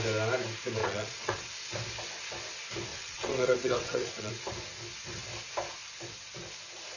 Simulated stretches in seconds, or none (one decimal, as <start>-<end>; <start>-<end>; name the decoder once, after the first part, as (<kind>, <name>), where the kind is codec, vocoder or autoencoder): 0.8-1.5 (vocoder, WaveNeXt); 2.9-4.3